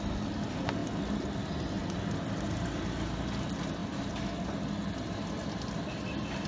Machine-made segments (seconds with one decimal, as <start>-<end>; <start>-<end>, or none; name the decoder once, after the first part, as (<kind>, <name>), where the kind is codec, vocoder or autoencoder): none